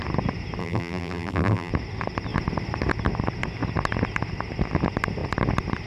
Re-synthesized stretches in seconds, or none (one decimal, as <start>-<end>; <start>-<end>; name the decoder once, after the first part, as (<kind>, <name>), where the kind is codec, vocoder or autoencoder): 0.6-1.7 (vocoder, BigVGAN v2)